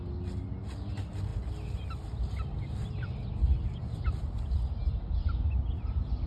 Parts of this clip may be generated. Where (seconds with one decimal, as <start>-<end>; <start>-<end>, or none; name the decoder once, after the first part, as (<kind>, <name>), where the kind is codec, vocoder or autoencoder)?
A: none